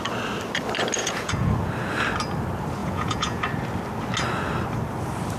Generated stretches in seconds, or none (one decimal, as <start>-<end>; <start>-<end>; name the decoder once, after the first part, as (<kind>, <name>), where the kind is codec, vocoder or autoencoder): 1.0-1.5 (vocoder, Vocos); 2.8-3.4

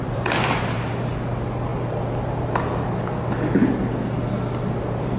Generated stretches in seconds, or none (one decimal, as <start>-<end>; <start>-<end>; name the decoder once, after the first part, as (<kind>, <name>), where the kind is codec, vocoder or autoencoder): 0.0-1.1 (vocoder, BigVGAN v2)

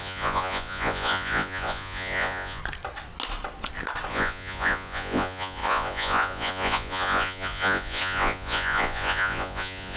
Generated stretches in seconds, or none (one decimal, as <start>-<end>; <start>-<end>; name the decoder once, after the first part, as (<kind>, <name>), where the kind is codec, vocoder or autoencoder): 0.0-2.6 (vocoder, Vocos); 4.1-10.0

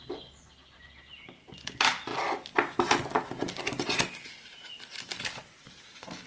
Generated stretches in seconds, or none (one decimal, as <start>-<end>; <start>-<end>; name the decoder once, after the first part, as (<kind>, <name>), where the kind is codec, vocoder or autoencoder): none